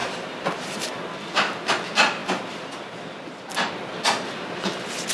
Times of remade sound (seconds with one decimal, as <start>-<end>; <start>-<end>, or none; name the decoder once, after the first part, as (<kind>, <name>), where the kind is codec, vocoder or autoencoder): 0.0-0.9 (vocoder, BigVGAN v2)